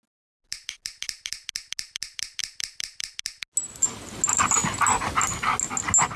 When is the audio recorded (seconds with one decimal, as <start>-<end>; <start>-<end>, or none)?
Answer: 0.0-6.2